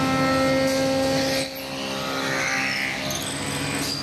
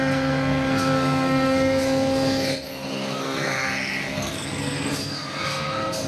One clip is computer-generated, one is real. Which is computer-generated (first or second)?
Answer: second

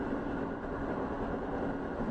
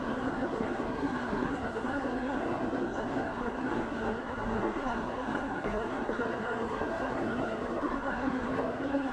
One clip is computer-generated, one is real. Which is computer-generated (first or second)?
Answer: second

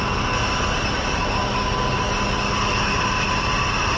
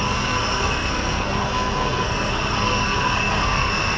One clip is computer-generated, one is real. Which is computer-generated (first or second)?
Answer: second